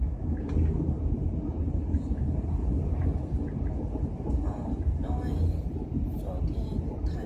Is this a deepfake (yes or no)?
no